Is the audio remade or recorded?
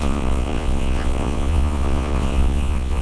remade